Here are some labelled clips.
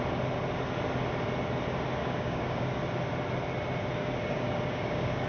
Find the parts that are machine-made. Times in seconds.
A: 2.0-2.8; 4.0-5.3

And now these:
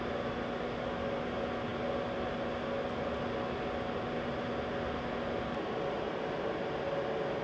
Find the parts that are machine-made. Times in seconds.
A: none

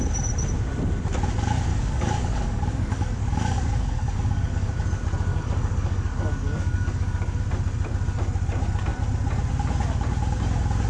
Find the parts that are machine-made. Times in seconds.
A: 1.7-4.7; 5.3-7.4